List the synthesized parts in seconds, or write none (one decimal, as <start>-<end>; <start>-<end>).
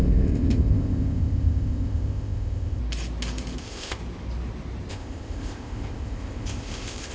0.0-2.8; 3.6-4.0; 4.9-7.1